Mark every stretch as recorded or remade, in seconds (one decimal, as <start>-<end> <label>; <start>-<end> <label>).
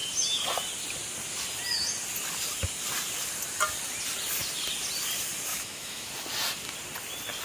0.0-5.5 recorded; 5.5-6.1 remade; 6.1-7.4 recorded